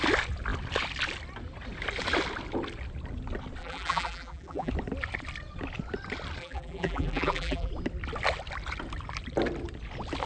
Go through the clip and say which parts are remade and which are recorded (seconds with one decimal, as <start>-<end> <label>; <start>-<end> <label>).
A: 0.0-3.6 recorded; 3.6-4.7 remade; 4.7-6.4 recorded; 6.4-7.7 remade; 7.7-10.3 recorded